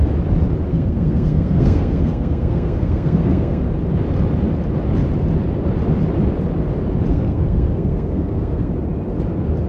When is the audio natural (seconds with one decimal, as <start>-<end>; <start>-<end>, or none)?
0.0-0.7; 3.6-7.1; 8.7-9.7